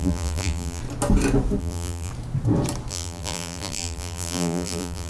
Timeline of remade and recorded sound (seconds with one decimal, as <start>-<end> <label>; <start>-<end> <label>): 0.0-0.8 remade; 0.8-1.6 recorded; 1.6-2.1 remade; 2.1-2.9 recorded; 2.9-5.1 remade